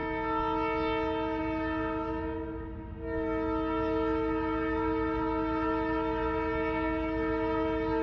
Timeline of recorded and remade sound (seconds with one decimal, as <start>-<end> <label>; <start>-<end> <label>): 0.0-8.0 recorded